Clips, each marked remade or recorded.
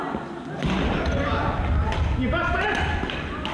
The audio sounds recorded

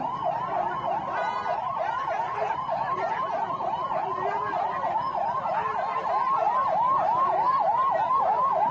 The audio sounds remade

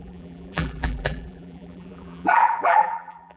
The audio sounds remade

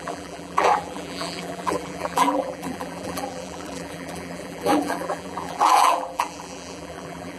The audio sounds remade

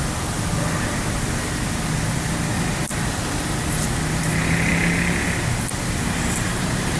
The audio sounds recorded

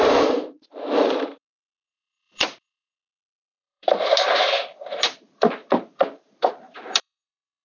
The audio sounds remade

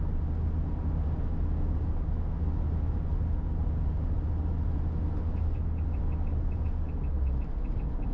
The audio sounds recorded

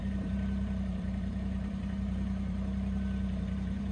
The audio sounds remade